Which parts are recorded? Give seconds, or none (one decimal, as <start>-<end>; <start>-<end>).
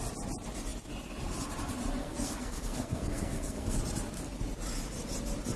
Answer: 0.0-2.0; 3.8-5.6